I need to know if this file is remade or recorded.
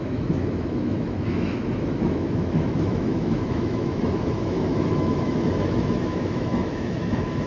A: remade